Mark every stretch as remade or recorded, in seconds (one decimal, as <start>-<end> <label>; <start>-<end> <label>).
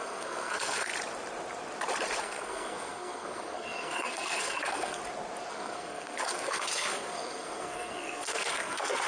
0.0-0.9 remade; 0.9-2.2 recorded; 2.2-5.0 remade; 5.0-5.5 recorded; 5.5-9.1 remade